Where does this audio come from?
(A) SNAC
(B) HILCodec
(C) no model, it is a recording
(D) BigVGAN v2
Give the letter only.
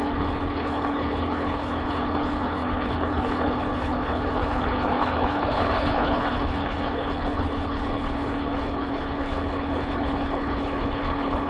B